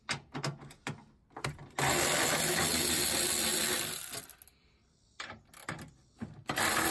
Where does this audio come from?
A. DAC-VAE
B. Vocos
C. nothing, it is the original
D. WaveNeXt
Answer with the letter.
C